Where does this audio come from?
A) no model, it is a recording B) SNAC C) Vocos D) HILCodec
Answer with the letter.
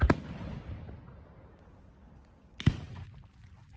A